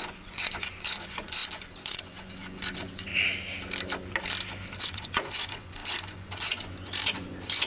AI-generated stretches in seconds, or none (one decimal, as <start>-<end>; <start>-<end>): 0.0-3.1; 4.8-7.7